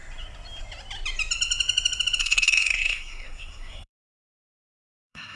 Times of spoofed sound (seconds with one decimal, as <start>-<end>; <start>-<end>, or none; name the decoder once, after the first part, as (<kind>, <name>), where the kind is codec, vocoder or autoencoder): 2.2-5.4 (codec, SNAC)